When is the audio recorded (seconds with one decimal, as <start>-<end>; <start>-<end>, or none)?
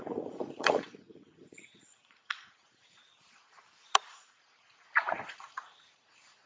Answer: 3.0-4.1